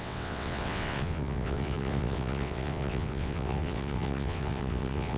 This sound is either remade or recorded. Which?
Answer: remade